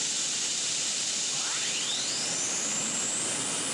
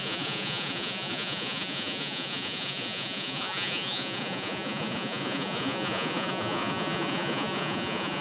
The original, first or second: first